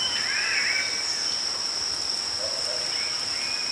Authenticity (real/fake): real